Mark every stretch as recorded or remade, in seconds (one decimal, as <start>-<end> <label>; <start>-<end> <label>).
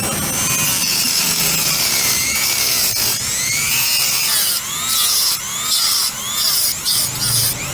0.0-0.8 recorded; 0.8-5.4 remade; 5.4-7.7 recorded